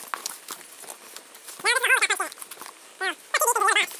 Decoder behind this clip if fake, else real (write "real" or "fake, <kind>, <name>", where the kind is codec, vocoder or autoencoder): real